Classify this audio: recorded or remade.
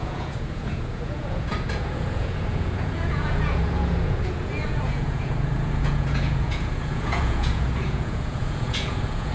remade